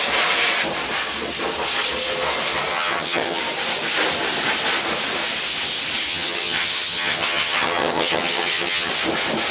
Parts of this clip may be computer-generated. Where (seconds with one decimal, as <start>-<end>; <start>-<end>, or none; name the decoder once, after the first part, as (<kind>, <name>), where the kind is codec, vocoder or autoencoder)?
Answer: 2.7-3.4 (vocoder, HiFi-GAN); 6.1-8.9